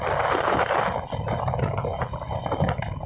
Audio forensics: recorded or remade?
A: recorded